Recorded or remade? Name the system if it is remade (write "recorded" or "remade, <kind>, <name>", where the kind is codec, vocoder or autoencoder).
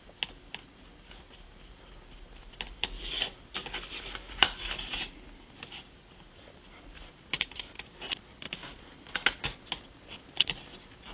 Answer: recorded